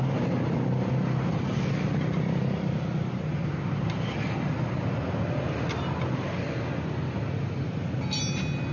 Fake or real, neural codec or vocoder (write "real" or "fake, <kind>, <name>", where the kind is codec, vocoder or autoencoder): real